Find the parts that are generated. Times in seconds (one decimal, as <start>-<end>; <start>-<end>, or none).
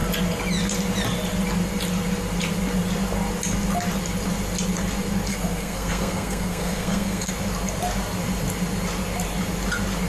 5.3-7.3